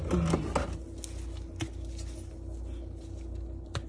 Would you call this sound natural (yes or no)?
yes